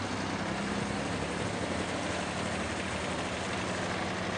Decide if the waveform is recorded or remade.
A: recorded